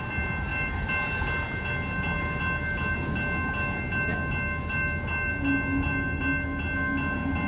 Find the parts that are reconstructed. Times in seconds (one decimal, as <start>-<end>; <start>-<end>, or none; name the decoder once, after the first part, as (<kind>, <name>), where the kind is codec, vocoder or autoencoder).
none